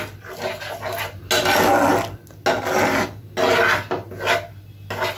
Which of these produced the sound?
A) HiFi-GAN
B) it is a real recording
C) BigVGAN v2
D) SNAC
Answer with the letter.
B